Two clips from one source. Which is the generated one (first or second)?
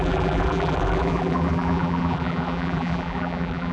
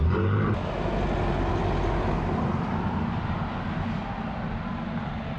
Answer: first